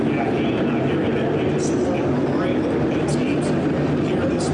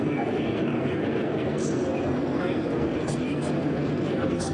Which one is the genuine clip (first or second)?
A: first